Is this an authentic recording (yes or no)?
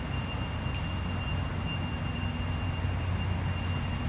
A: yes